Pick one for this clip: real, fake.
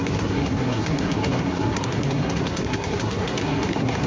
fake